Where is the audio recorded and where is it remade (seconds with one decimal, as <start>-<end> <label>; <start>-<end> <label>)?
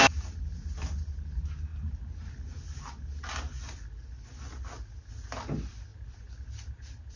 0.0-7.2 recorded